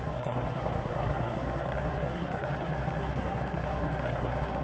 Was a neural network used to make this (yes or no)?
yes